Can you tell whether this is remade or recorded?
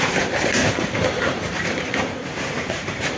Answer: remade